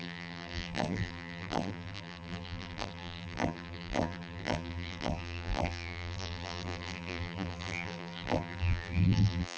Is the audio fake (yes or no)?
yes